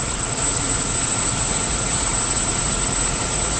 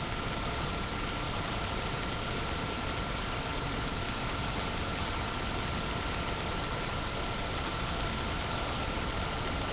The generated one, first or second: first